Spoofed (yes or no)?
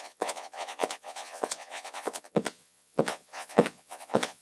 yes